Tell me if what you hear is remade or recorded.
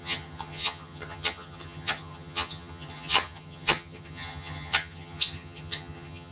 remade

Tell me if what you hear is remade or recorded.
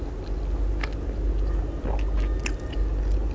recorded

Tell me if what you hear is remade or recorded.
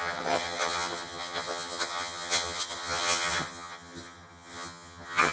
remade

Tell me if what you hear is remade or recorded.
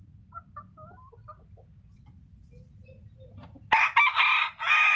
recorded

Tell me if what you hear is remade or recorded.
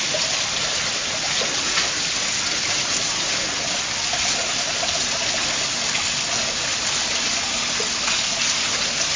recorded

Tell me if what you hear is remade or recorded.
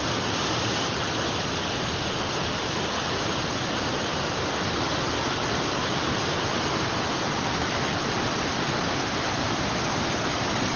recorded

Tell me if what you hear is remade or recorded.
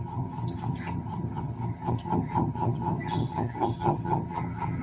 remade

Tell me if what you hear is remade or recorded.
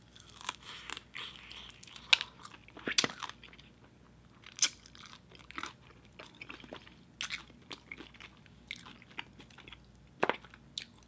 recorded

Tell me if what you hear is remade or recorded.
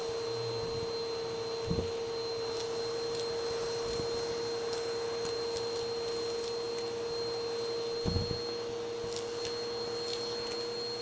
recorded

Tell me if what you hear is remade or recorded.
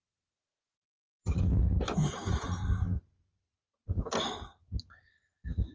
recorded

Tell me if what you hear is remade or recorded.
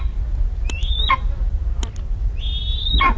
recorded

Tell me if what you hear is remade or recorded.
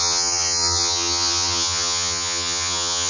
remade